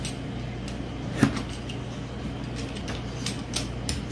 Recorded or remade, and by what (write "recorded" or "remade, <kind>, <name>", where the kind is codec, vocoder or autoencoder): recorded